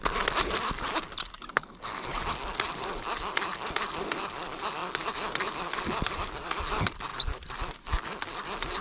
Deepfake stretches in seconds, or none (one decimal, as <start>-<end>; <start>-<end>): none